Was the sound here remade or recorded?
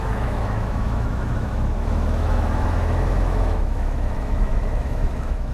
remade